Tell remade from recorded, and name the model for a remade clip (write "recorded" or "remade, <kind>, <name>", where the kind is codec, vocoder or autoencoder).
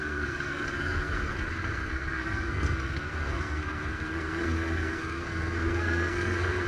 remade, codec, SNAC